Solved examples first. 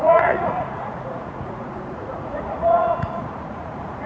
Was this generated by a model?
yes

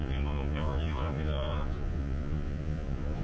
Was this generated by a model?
yes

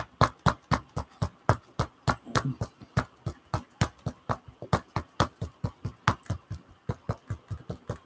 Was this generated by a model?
no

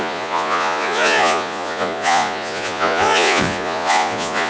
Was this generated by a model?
yes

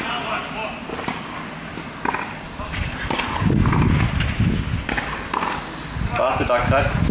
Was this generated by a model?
no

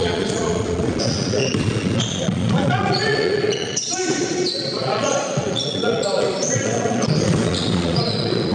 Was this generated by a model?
yes